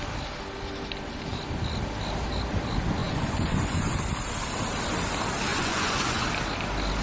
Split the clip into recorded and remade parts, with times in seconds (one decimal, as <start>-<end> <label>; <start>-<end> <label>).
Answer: 0.0-3.0 recorded; 3.0-4.0 remade; 4.0-5.5 recorded; 5.5-6.2 remade; 6.2-7.0 recorded